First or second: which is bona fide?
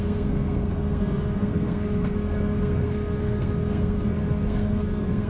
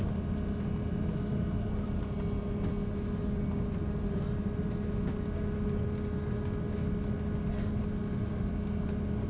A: second